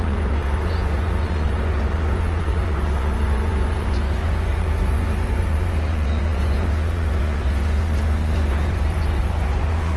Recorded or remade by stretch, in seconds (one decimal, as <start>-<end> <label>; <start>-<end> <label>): 0.0-10.0 remade